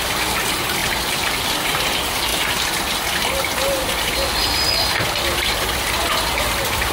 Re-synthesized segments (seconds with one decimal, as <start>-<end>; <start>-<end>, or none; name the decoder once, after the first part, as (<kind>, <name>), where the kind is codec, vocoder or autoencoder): 0.0-0.8 (vocoder, BigVGAN v2); 1.4-2.3; 6.4-6.9